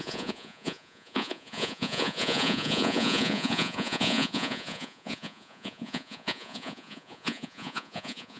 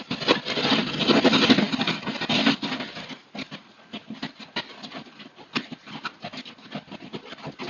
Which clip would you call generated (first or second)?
first